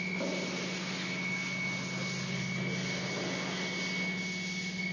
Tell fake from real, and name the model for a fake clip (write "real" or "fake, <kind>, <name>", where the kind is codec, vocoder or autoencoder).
real